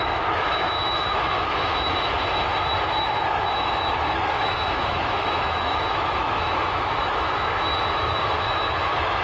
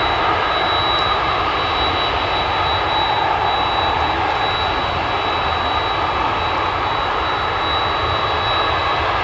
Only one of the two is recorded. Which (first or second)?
second